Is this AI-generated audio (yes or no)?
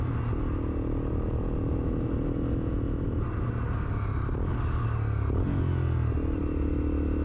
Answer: no